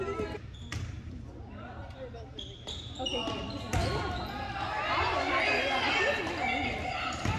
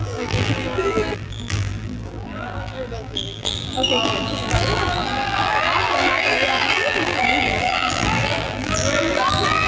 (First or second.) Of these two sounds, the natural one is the first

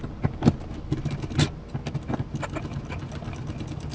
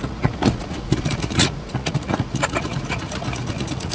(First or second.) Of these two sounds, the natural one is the first